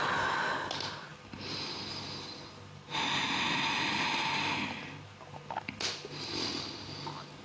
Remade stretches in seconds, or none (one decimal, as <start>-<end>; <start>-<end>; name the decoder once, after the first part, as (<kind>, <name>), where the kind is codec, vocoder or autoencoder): 1.1-1.7 (vocoder, BigVGAN v2)